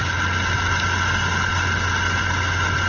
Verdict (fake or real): real